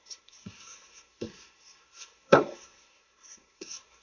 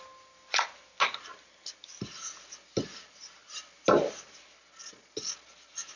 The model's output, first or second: first